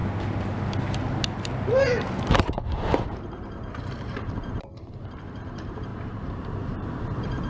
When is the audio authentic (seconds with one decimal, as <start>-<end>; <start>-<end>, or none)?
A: 0.0-2.3